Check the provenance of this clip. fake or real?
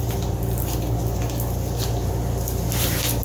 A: real